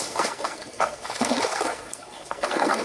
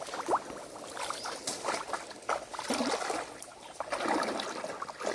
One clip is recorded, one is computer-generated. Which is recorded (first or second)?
second